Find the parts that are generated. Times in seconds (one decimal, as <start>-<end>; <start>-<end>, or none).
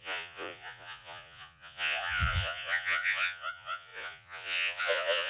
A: 0.0-5.3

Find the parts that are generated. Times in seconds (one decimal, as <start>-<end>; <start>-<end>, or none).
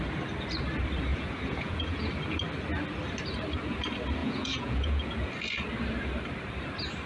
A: 1.1-2.1; 4.2-5.3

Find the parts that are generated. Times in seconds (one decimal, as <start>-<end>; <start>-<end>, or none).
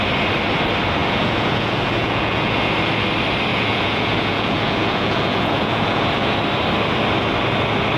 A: 1.0-2.7; 3.5-6.4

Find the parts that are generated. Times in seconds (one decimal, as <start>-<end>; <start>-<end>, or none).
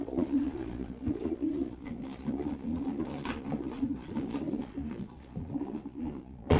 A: 0.0-6.6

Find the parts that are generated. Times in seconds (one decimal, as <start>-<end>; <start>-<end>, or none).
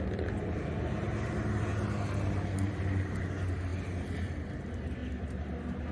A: none